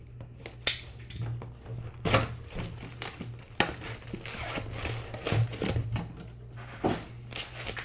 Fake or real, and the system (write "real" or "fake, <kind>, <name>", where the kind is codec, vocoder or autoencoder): real